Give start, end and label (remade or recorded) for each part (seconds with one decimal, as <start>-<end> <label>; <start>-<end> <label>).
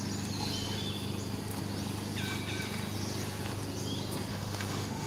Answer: 0.0-4.3 recorded; 4.3-5.1 remade